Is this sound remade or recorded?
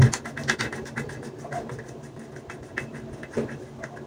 recorded